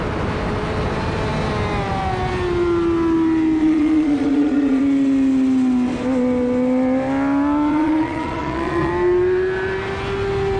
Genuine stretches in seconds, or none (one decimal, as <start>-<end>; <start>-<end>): 0.0-3.6; 4.8-7.7; 8.9-10.6